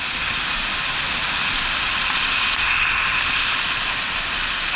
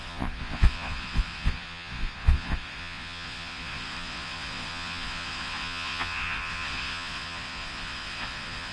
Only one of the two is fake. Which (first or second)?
second